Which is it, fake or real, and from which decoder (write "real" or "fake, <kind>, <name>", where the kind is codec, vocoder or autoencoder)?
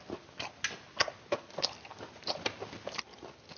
real